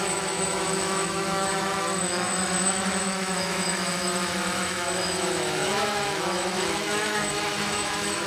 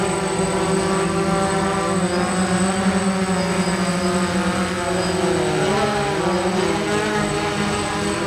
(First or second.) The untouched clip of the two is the second